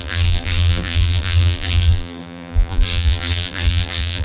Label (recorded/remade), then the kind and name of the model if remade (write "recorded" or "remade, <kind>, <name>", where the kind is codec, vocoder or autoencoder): remade, vocoder, BigVGAN v2